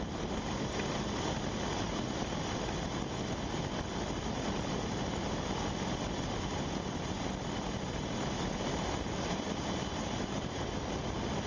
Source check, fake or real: real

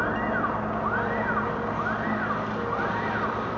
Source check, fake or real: real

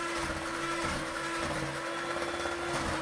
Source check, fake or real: real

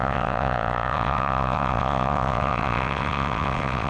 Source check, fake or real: fake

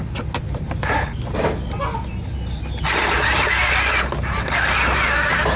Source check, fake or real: real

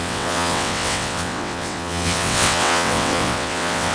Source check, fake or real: fake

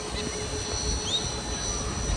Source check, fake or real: real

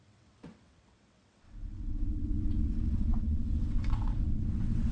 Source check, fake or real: fake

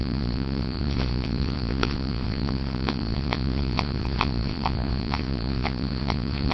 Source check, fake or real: fake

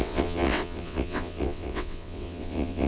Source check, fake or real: fake